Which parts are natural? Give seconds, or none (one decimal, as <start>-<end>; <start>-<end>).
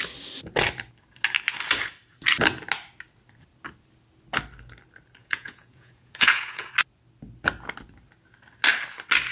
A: 0.0-5.2; 6.7-9.3